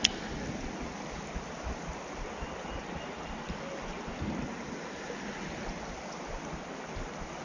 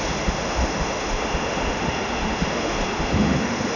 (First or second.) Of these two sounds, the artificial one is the second